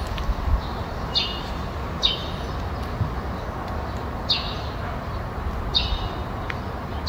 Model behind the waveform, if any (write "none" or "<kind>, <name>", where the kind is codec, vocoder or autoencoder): none